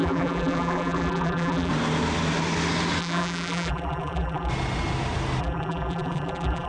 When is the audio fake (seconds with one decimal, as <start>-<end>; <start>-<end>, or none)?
0.0-1.7; 3.0-4.5; 5.4-6.7